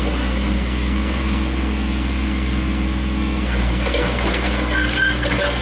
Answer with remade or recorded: remade